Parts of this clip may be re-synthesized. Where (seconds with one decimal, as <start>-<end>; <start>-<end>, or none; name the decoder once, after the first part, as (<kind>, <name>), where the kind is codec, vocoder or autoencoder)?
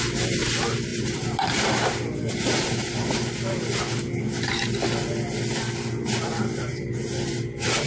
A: 0.9-3.4 (vocoder, BigVGAN v2); 6.7-7.9